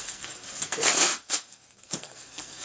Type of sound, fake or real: fake